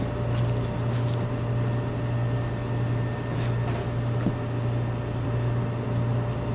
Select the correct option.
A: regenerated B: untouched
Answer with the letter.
B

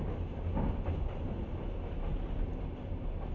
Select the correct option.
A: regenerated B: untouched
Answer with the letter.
B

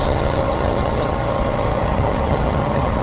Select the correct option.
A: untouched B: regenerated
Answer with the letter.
B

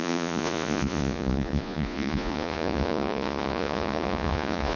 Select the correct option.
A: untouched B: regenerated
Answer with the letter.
B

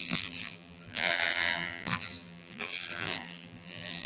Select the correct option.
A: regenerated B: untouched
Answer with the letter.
A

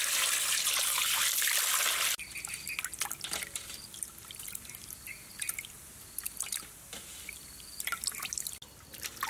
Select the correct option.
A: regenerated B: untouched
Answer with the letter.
B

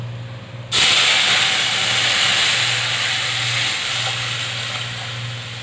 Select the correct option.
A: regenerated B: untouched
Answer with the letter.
B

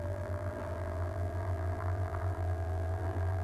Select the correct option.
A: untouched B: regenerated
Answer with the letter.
B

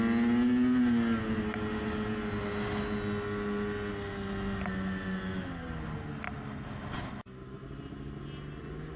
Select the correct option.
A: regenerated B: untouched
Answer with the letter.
B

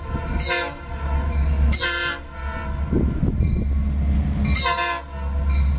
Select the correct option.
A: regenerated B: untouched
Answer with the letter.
B